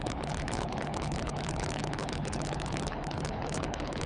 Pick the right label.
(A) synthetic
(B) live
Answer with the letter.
A